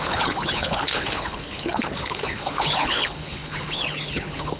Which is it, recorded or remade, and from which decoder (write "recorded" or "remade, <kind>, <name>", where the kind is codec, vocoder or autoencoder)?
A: remade, codec, HILCodec